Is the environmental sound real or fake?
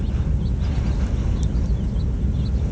real